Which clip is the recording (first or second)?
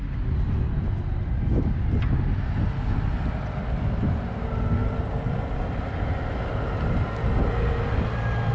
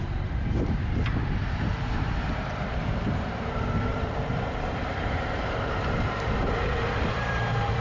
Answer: first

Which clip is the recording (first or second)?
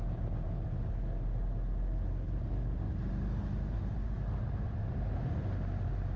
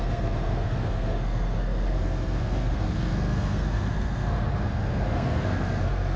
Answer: first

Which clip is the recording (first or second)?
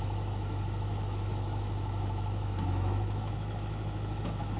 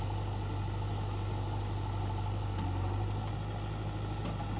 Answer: second